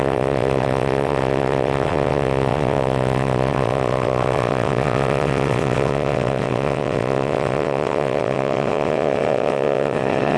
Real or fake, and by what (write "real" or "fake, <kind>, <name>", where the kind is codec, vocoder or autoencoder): fake, vocoder, WaveNeXt